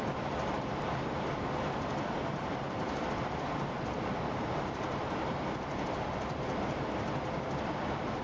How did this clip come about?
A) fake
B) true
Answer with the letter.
B